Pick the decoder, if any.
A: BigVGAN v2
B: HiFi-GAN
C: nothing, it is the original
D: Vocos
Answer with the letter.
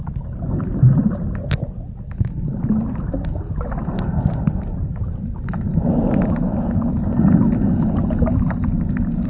C